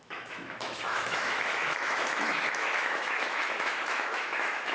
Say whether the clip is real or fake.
fake